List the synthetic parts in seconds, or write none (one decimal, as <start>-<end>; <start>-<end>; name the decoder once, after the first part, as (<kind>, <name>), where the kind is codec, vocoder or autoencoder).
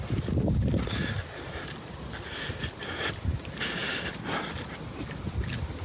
none